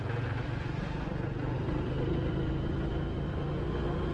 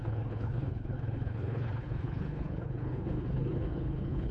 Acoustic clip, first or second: first